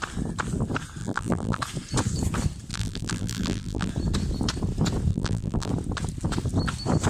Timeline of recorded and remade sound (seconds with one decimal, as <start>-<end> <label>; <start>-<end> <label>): 0.0-1.0 recorded; 1.0-1.6 remade; 1.6-2.7 recorded; 2.7-3.9 remade; 3.9-5.1 recorded; 5.1-5.7 remade; 5.7-7.1 recorded